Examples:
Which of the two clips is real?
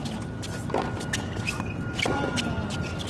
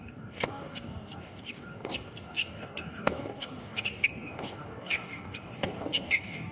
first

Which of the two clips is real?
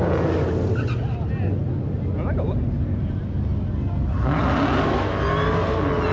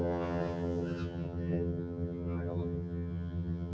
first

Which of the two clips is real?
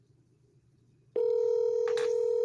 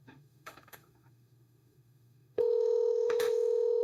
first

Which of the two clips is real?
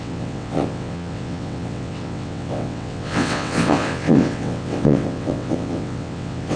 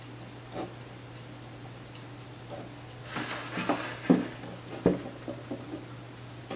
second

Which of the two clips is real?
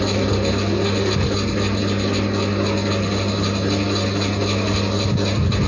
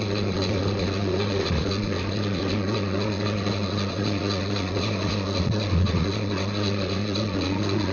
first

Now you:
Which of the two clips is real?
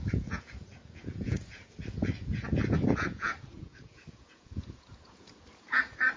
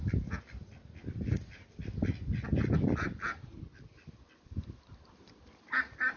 second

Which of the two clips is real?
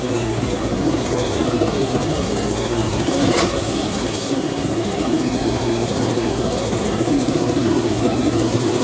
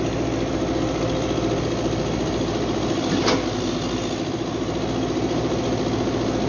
second